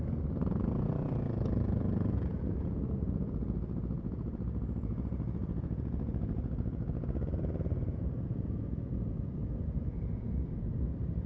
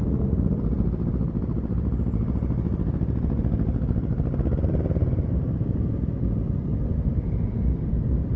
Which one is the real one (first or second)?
second